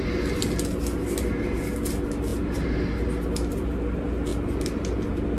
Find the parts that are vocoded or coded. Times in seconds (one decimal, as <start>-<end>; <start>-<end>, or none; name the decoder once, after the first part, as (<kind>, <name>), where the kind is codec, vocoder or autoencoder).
none